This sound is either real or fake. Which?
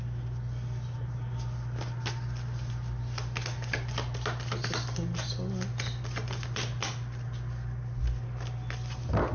real